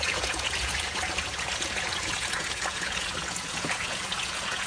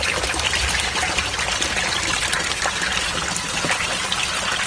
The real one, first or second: second